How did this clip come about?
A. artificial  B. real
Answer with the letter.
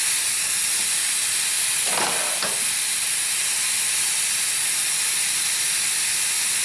B